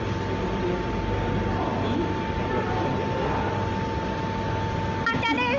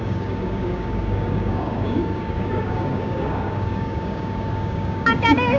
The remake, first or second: second